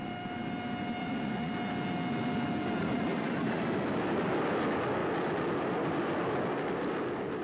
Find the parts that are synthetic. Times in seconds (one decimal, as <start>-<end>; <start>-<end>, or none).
1.0-1.5; 2.8-3.6